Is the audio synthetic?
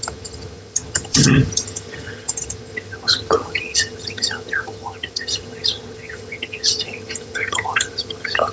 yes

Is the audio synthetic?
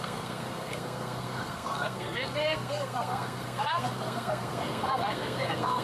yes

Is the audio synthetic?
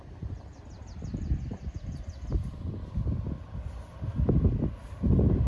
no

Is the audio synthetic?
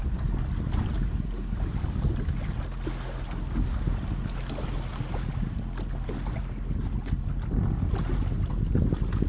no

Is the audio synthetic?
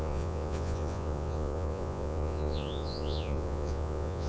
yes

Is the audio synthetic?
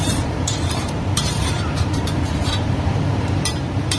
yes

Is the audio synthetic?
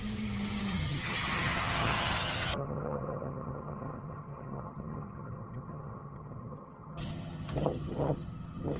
yes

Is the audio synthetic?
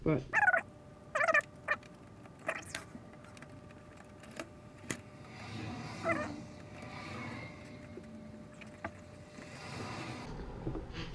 no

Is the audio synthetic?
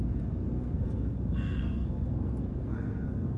yes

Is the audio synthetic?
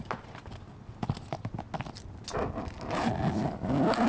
no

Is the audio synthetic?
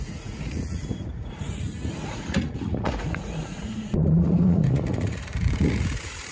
yes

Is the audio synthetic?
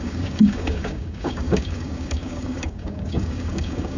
yes